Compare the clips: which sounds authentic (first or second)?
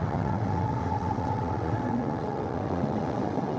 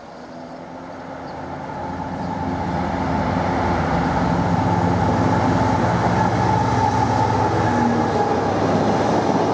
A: second